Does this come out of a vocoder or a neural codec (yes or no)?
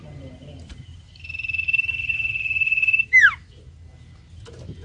no